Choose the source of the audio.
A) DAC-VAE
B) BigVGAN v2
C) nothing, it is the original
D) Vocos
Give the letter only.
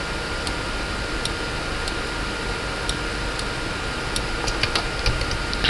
C